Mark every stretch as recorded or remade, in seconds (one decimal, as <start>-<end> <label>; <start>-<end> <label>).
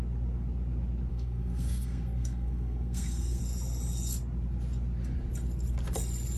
0.0-1.1 recorded; 1.1-3.4 remade; 3.4-6.4 recorded